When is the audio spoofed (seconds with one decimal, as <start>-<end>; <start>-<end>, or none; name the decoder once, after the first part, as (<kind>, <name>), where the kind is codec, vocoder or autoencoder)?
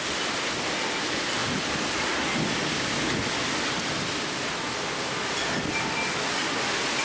none